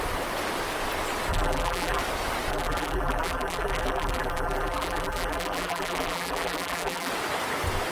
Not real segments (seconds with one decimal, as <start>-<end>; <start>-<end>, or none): 1.3-2.0; 2.5-7.1